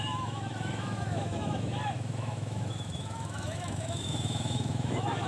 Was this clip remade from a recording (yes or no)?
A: yes